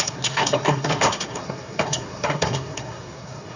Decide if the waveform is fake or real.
fake